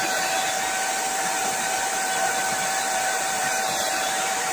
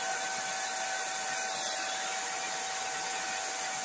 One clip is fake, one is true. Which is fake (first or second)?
first